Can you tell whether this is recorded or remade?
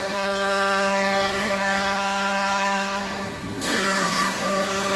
remade